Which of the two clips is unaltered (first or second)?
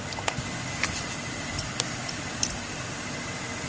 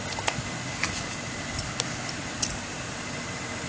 second